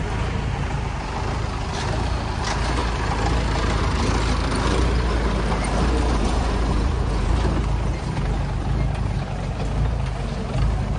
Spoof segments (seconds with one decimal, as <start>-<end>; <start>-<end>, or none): 6.1-7.3